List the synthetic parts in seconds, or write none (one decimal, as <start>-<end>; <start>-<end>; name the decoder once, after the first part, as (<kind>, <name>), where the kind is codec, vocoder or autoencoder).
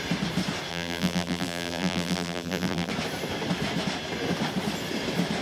0.7-2.9 (vocoder, BigVGAN v2)